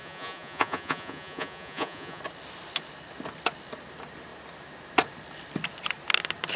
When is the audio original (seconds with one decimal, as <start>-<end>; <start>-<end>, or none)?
2.2-6.6